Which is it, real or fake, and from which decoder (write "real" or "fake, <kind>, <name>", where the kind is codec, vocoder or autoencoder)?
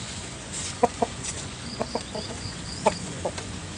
fake, vocoder, Vocos